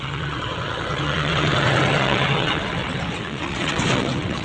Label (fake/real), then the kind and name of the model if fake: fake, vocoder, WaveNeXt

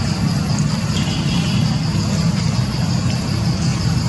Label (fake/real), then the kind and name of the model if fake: real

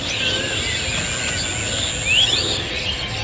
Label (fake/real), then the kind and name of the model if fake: real